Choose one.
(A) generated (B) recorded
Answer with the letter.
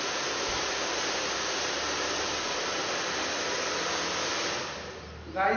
B